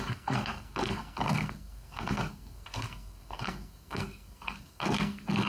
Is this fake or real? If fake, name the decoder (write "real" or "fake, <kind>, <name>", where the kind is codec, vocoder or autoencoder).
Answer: fake, codec, SNAC